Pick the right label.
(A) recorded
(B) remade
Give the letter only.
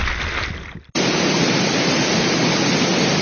A